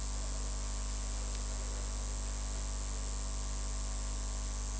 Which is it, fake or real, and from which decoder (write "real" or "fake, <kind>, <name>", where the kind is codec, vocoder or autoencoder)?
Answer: real